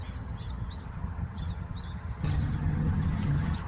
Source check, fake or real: fake